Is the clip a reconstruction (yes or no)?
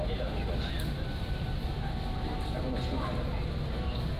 no